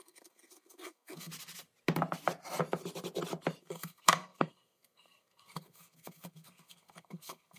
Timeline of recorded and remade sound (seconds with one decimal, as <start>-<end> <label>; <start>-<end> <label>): 0.0-1.3 remade; 1.3-3.6 recorded; 3.6-7.6 remade